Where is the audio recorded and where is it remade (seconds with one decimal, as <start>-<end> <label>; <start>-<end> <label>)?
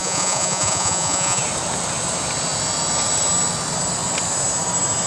0.0-1.4 remade; 1.4-5.1 recorded